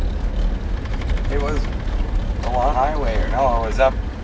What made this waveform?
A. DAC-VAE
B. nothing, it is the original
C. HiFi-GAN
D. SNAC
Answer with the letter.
B